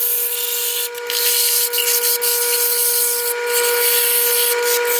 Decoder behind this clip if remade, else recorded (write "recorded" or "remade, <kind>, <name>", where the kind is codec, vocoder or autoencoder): recorded